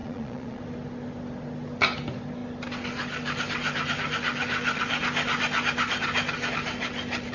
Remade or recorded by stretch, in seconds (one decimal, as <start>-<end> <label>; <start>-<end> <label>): 0.0-0.6 remade; 0.6-7.3 recorded